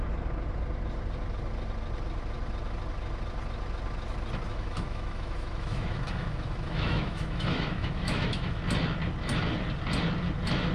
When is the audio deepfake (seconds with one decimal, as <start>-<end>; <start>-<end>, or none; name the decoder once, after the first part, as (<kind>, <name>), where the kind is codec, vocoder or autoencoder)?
4.5-8.6 (autoencoder, DAC-VAE)